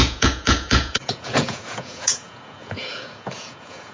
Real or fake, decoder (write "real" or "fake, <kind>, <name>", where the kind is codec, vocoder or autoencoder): fake, vocoder, Vocos